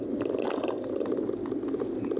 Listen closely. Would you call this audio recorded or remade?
recorded